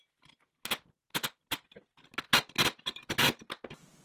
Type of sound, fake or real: real